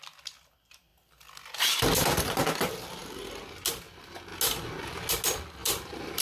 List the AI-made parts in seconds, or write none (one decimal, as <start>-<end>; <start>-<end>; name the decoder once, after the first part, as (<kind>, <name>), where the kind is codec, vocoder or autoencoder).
5.6-6.2 (vocoder, BigVGAN v2)